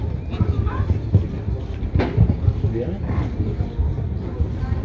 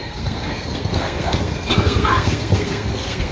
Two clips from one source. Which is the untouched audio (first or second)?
first